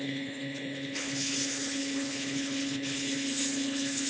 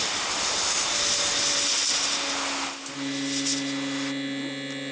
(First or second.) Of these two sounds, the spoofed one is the first